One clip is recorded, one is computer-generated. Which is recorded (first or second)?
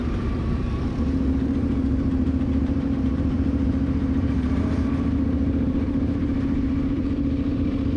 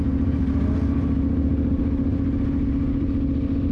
second